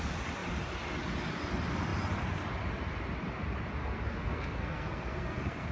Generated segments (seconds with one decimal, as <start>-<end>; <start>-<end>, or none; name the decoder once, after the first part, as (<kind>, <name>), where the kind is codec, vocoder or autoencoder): 3.8-5.7 (codec, SNAC)